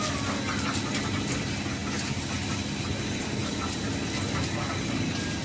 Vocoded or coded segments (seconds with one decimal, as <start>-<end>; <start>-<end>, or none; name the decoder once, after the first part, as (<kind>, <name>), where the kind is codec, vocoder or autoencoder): none